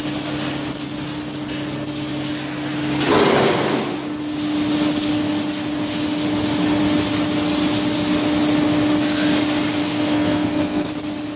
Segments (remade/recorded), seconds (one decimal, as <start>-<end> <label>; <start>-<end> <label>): 0.0-9.8 recorded; 9.8-10.9 remade; 10.9-11.4 recorded